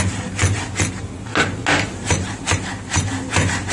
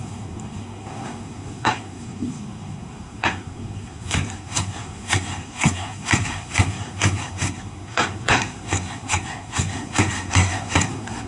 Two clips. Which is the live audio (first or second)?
first